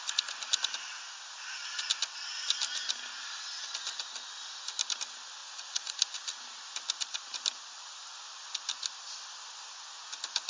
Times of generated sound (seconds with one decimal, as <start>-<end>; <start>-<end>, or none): 5.4-5.9